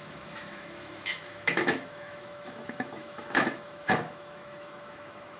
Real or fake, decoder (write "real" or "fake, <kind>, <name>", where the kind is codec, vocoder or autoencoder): fake, autoencoder, DAC-VAE